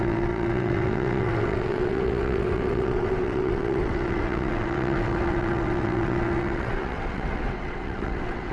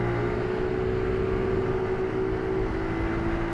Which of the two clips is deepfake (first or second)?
first